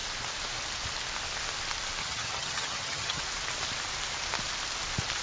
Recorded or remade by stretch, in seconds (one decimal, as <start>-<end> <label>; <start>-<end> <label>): 0.0-2.0 recorded; 2.0-3.2 remade; 3.2-5.2 recorded